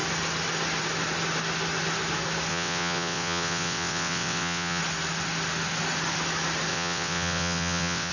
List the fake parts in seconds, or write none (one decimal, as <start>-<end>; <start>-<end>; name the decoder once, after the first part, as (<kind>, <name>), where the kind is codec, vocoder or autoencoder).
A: 2.5-4.8 (vocoder, WaveNeXt); 6.7-8.1